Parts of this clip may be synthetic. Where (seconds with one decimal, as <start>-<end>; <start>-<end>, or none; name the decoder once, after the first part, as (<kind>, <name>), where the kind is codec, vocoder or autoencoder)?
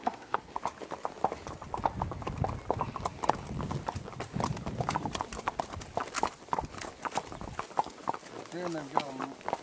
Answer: 0.0-0.5 (codec, SNAC)